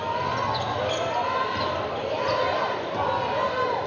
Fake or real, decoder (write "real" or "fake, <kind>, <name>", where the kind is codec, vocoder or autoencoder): real